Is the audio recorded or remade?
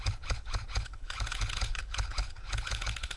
remade